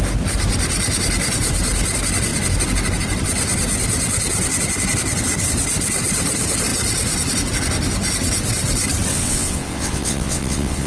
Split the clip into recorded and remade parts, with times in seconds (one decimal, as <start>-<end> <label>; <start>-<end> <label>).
0.0-9.1 recorded; 9.1-10.9 remade

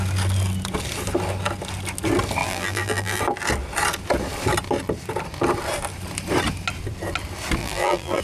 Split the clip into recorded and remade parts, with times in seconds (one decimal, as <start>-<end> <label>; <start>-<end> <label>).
0.0-2.4 recorded; 2.4-3.2 remade; 3.2-7.6 recorded; 7.6-8.2 remade